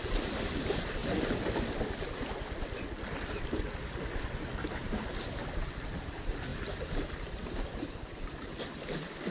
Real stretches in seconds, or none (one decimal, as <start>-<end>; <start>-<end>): 0.0-9.3